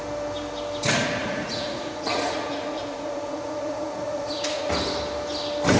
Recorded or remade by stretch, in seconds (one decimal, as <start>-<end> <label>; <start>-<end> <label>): 0.0-1.2 recorded; 1.2-4.7 remade; 4.7-5.8 recorded